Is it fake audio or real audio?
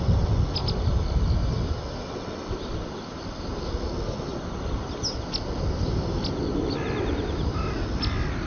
real